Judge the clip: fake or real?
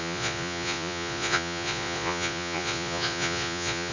fake